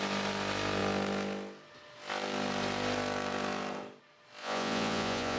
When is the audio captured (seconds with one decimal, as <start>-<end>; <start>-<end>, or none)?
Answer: 0.0-4.4

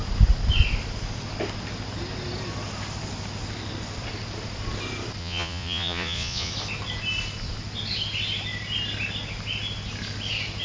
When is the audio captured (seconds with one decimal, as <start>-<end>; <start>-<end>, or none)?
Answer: 0.0-5.2; 6.5-10.6